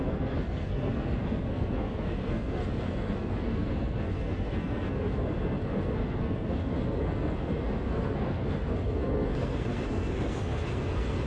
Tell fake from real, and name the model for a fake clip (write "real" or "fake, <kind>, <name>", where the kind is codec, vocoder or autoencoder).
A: fake, codec, SNAC